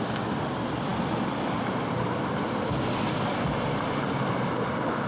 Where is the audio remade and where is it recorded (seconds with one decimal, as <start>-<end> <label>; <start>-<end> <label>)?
0.0-5.1 recorded